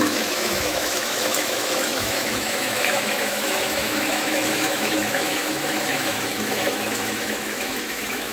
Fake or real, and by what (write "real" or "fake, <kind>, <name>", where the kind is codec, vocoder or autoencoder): fake, autoencoder, DAC-VAE